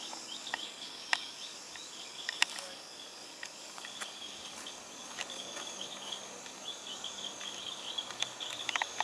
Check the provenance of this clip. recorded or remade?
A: remade